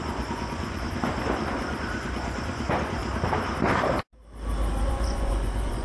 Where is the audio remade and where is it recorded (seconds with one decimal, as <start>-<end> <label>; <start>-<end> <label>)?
0.0-3.0 remade; 3.0-4.9 recorded; 4.9-5.8 remade